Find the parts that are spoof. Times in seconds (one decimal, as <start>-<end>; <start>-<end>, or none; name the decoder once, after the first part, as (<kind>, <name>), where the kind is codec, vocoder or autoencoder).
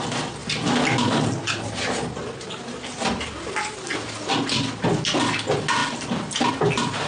0.4-4.7 (vocoder, BigVGAN v2); 5.8-6.5